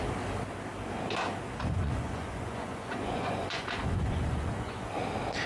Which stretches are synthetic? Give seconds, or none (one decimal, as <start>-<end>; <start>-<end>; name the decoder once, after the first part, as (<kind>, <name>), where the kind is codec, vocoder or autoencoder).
1.6-4.9 (vocoder, Vocos)